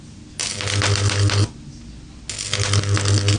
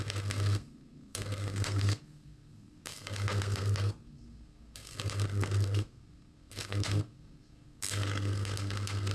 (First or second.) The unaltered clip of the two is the first